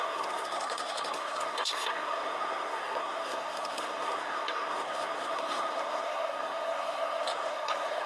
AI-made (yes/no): yes